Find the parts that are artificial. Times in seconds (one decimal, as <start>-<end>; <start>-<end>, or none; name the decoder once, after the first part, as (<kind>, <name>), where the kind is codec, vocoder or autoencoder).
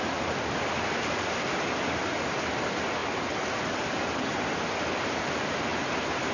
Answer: none